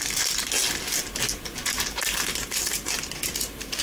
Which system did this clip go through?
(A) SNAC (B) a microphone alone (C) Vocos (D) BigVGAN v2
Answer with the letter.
B